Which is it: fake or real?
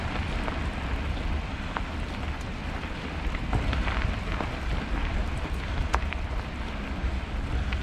real